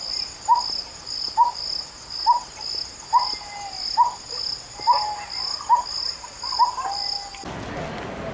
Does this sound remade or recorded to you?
recorded